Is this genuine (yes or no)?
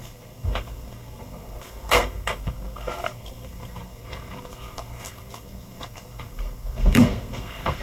no